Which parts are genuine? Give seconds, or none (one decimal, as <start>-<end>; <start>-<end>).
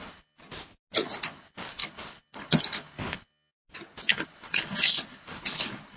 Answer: 0.4-1.1; 3.5-4.1